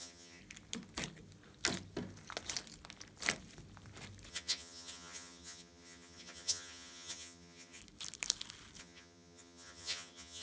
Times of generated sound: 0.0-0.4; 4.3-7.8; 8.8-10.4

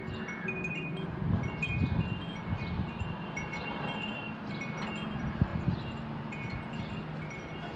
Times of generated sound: 0.7-7.8

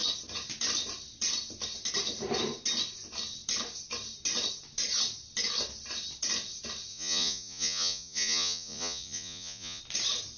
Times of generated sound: 6.9-9.8

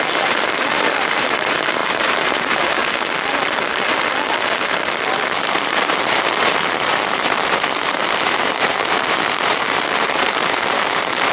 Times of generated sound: 0.0-2.8; 5.4-11.3

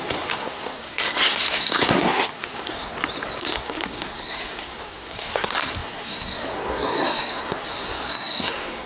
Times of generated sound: 0.0-2.9; 3.4-8.9

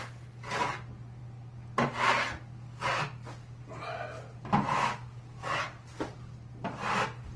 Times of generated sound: none

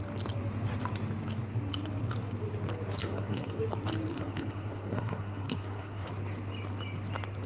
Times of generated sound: 3.0-3.6; 4.1-6.1